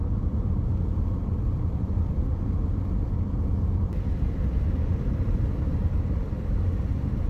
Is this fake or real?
fake